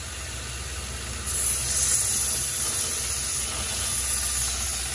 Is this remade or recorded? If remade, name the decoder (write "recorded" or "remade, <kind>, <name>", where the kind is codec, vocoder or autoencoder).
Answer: recorded